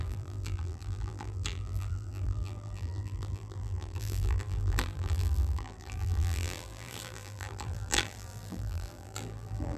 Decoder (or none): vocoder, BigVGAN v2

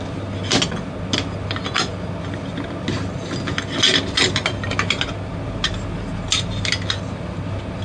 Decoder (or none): none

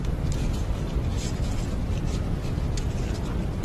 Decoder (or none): none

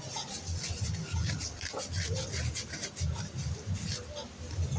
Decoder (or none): none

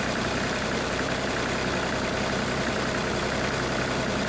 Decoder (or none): vocoder, BigVGAN v2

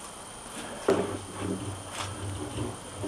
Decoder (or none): none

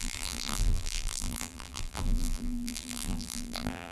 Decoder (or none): vocoder, BigVGAN v2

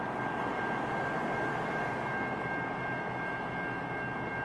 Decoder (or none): none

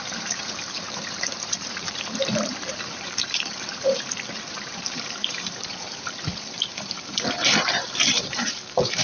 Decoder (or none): vocoder, BigVGAN v2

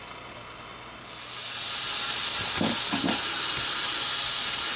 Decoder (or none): none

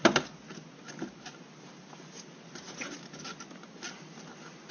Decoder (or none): none